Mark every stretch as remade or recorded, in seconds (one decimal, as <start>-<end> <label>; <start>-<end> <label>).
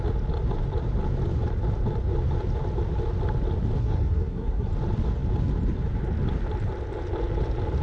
0.0-3.8 recorded; 3.8-4.7 remade; 4.7-7.8 recorded